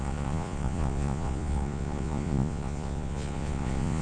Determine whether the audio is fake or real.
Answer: fake